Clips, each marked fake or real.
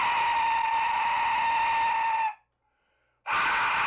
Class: real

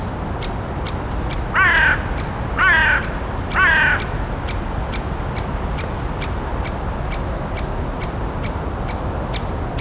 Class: real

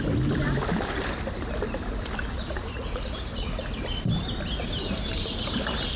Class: real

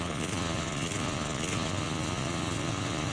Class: fake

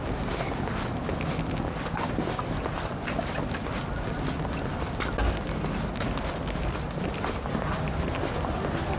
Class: real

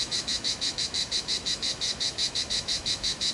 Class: fake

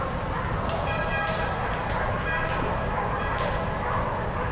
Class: real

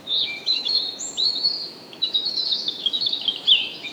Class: fake